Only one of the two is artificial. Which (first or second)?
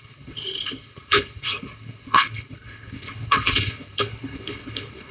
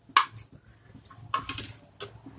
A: first